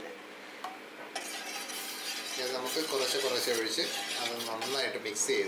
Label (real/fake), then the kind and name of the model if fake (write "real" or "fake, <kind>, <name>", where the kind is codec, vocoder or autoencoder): real